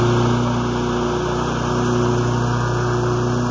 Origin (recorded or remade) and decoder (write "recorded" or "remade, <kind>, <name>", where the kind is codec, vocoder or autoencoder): recorded